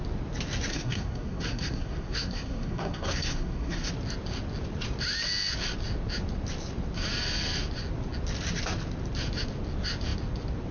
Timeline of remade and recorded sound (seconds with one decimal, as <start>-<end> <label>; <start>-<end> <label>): 0.0-0.7 recorded; 0.7-3.9 remade; 3.9-10.7 recorded